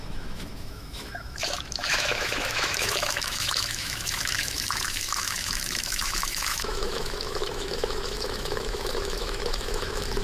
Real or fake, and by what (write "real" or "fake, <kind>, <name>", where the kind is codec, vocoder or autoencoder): fake, autoencoder, DAC-VAE